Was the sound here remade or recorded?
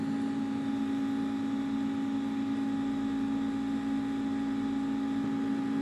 recorded